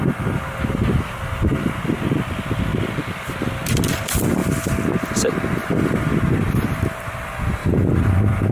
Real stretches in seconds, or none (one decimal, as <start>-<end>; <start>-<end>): 0.0-8.5